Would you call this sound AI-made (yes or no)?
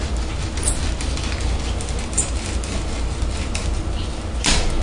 no